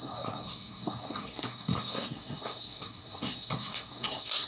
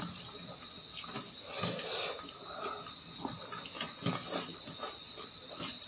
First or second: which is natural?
second